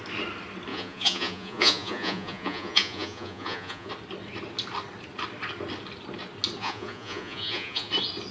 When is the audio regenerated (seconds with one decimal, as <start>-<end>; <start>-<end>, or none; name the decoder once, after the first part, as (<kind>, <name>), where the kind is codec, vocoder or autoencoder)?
0.7-3.9 (vocoder, Vocos); 6.6-7.9